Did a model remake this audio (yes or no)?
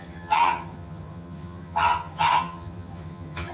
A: yes